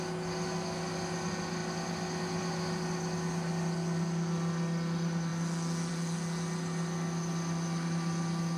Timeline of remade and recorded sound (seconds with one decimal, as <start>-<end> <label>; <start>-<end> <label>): 0.0-8.6 recorded